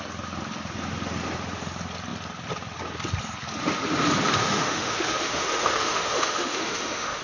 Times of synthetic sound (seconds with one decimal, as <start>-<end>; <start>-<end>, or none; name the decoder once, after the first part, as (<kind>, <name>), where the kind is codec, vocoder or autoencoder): 4.4-7.2 (autoencoder, DAC-VAE)